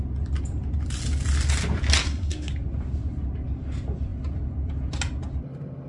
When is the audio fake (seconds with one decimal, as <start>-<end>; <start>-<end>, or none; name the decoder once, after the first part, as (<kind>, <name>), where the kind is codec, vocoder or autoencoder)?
2.0-2.5 (codec, SNAC)